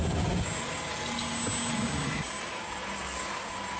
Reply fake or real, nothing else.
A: real